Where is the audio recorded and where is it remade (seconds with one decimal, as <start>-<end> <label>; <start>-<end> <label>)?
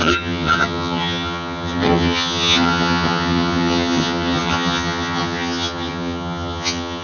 0.0-7.0 remade